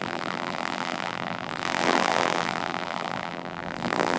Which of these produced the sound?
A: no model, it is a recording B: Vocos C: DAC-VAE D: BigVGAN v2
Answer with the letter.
D